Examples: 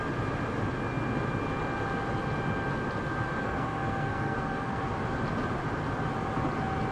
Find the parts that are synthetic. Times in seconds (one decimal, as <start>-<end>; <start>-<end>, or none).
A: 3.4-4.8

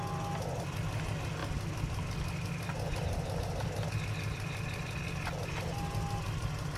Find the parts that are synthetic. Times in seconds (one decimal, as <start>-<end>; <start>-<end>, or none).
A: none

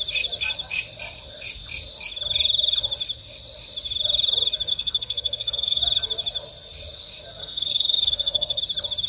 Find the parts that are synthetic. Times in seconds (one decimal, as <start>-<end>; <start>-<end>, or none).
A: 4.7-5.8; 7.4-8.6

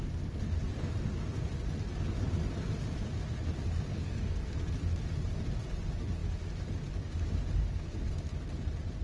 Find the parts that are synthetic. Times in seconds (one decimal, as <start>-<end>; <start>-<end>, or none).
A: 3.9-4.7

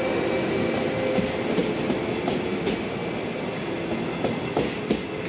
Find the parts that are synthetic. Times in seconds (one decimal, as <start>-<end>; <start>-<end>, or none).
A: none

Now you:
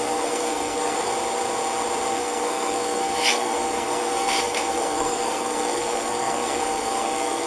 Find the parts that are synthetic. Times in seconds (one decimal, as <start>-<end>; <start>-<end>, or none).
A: 0.0-1.1; 2.1-7.5

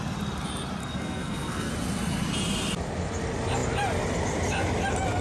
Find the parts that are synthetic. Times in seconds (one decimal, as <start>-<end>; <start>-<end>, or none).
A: 0.8-1.7

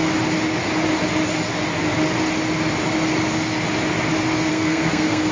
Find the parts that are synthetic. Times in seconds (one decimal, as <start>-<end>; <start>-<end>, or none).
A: 4.5-5.3